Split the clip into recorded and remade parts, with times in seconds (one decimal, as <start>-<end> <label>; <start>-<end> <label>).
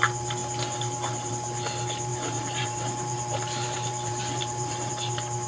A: 0.0-2.1 recorded; 2.1-4.9 remade; 4.9-5.5 recorded